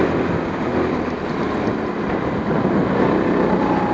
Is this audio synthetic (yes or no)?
no